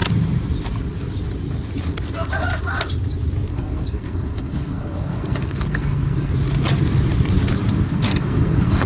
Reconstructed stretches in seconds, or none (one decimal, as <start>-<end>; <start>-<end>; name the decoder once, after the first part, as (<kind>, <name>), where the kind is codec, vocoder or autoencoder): 3.5-6.3 (codec, SNAC); 7.7-8.9